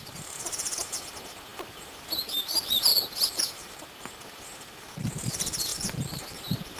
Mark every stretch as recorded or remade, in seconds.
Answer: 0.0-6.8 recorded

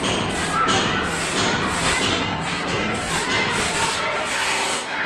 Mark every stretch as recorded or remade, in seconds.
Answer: 0.0-2.1 recorded; 2.1-3.1 remade; 3.1-4.3 recorded; 4.3-5.1 remade